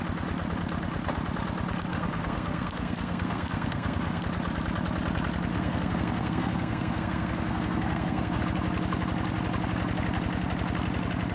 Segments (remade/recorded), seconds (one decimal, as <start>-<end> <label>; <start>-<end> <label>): 0.0-1.9 recorded; 1.9-4.2 remade; 4.2-5.5 recorded; 5.5-8.4 remade; 8.4-11.3 recorded